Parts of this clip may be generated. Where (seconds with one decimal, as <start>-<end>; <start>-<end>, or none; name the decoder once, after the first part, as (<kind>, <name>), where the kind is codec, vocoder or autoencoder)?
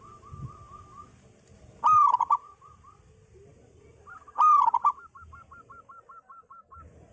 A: none